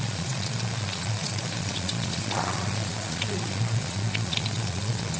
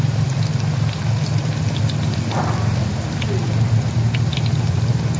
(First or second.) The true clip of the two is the second